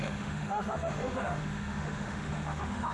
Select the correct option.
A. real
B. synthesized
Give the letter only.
B